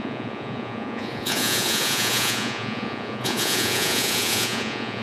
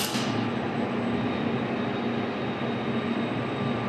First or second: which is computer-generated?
first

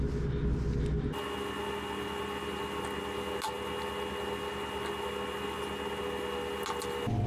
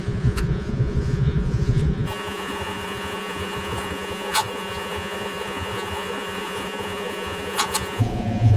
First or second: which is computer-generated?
second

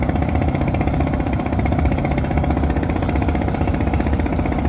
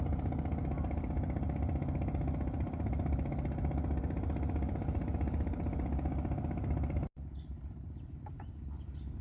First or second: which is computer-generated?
first